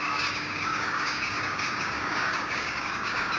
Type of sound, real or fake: fake